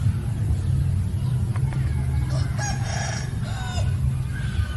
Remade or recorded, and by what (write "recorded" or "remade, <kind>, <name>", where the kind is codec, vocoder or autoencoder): recorded